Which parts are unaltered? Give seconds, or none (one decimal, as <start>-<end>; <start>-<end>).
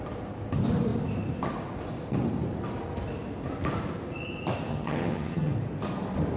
0.0-4.7; 5.5-6.4